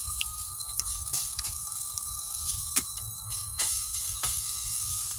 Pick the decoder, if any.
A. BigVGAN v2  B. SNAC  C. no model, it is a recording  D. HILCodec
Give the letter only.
B